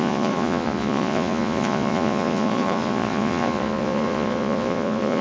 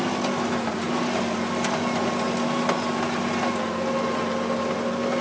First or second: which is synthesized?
first